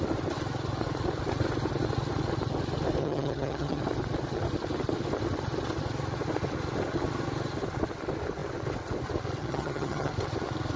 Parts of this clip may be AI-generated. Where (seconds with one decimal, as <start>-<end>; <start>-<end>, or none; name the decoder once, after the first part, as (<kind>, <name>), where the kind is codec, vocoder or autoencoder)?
3.0-3.8 (vocoder, HiFi-GAN); 9.4-10.1